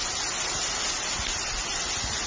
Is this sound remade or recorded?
recorded